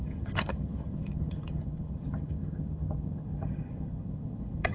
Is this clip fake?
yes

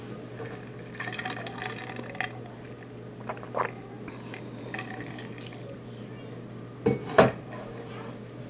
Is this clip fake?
no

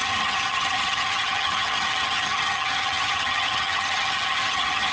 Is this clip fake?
yes